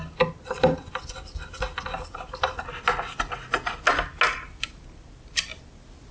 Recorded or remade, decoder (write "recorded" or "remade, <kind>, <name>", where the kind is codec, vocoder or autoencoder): recorded